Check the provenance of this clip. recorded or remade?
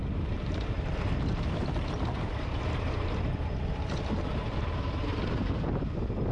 remade